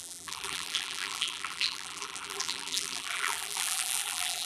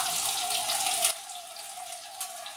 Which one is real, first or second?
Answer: second